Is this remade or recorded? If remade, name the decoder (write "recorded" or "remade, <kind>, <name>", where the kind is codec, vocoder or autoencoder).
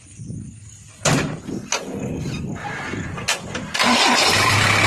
recorded